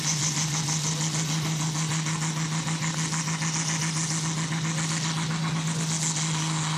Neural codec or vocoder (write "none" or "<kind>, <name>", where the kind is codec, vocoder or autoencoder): none